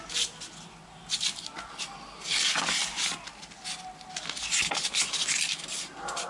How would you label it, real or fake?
real